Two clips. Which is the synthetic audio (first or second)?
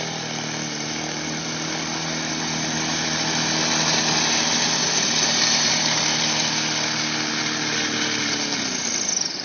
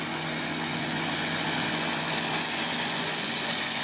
second